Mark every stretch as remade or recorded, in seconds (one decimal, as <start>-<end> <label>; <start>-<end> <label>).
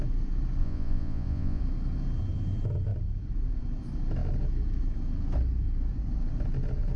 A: 0.0-0.6 recorded; 0.6-1.6 remade; 1.6-7.0 recorded